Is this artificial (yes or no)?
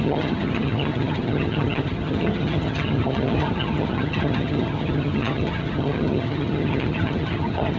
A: yes